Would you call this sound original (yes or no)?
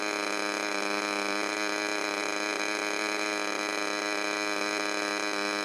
yes